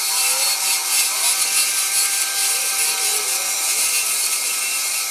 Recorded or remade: recorded